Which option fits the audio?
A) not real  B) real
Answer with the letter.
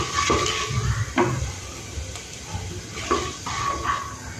B